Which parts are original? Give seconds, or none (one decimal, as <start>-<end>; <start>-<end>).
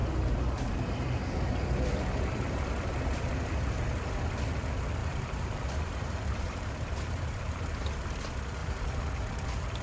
0.0-5.0; 7.9-8.6; 9.1-9.8